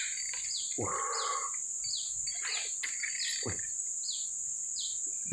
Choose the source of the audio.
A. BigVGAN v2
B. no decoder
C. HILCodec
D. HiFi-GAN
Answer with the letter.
B